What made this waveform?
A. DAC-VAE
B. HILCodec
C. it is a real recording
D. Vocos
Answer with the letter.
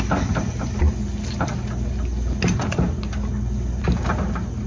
C